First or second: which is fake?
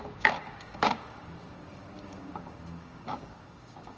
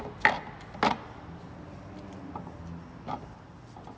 first